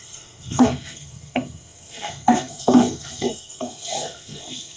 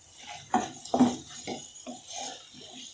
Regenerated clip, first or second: first